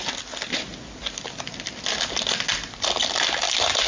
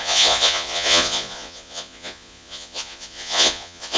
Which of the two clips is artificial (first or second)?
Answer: second